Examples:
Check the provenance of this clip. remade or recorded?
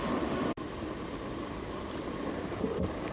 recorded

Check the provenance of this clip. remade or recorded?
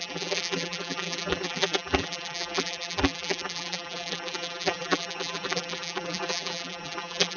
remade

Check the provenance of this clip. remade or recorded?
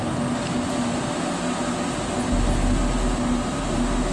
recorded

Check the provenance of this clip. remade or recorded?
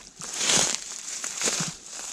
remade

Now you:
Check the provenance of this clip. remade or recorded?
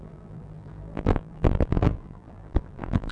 remade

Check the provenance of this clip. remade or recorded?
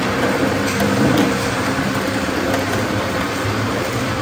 remade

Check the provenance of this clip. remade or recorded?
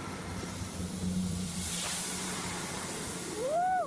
remade